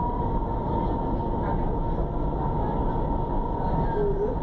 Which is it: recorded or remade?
recorded